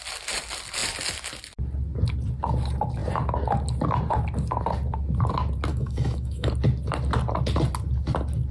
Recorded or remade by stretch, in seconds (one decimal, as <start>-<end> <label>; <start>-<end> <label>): 0.0-5.7 recorded; 5.7-6.5 remade; 6.5-8.5 recorded